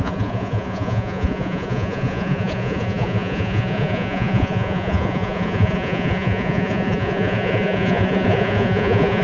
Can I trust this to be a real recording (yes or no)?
no